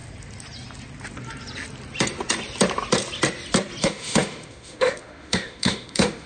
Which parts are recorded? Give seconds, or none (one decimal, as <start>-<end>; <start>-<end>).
0.0-3.8